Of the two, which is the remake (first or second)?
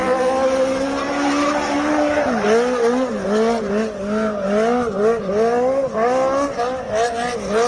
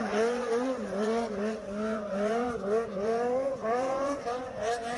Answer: second